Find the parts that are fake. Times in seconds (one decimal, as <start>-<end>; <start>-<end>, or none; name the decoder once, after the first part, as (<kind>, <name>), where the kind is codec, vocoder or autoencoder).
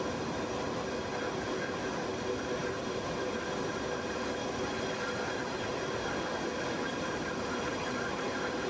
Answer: 2.6-3.9 (vocoder, BigVGAN v2); 6.9-8.7